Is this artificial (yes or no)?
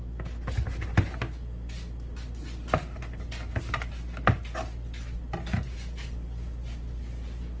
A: no